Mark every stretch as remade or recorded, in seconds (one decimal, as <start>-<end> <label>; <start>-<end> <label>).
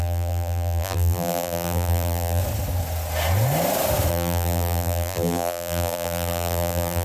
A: 0.0-2.4 remade; 2.4-4.1 recorded; 4.1-7.0 remade